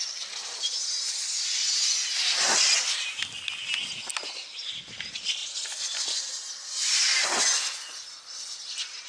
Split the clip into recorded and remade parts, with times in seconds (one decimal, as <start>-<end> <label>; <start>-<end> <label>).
0.0-9.1 recorded